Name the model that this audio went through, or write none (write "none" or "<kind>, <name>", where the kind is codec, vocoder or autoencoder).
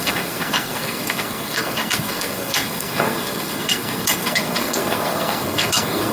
codec, SNAC